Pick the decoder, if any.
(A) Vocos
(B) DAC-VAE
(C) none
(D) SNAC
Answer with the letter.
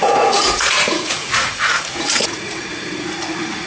A